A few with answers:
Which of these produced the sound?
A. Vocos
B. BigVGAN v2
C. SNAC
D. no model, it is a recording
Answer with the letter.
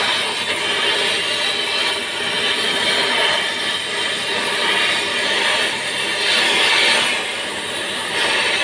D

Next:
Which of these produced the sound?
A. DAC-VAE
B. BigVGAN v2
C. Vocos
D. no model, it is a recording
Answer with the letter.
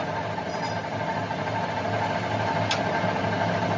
D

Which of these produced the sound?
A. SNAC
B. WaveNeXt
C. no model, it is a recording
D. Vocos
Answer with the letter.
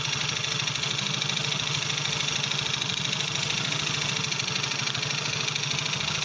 C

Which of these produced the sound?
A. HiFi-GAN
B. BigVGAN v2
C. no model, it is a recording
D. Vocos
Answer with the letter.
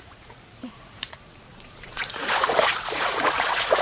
D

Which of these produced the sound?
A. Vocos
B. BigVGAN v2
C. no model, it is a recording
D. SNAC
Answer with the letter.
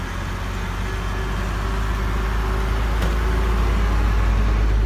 C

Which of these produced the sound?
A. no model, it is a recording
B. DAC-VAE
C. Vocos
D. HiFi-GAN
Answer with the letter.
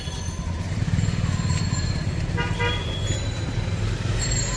A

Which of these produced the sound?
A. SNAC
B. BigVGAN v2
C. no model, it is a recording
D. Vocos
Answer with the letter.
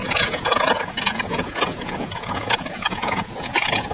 D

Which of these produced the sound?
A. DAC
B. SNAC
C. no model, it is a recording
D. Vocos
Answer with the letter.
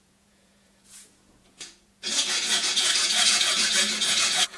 D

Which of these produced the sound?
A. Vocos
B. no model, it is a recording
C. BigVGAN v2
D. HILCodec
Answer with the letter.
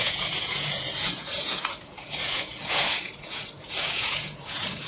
A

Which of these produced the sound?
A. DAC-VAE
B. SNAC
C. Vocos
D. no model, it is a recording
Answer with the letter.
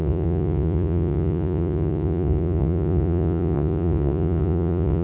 C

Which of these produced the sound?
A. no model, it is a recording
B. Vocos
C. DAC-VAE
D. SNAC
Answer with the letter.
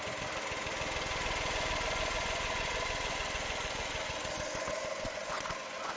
B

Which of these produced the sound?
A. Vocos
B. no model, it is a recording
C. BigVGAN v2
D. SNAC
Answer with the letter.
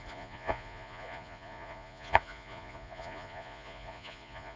A